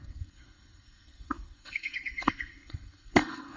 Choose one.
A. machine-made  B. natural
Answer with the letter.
A